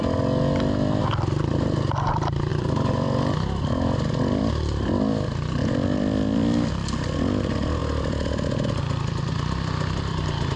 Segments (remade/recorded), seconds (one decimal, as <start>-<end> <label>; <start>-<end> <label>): 0.0-2.5 recorded; 2.5-6.7 remade; 6.7-10.6 recorded